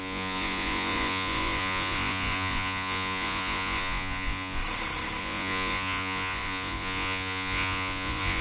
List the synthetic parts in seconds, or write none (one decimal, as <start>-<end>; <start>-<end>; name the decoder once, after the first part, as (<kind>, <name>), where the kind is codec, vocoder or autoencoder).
0.0-4.6 (vocoder, Vocos); 5.2-8.4